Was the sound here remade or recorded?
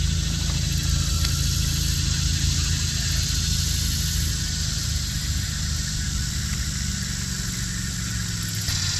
recorded